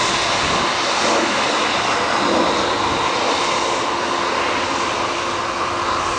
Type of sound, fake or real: real